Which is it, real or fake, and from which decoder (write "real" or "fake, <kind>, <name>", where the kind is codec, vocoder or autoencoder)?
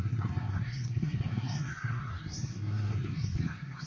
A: fake, codec, SNAC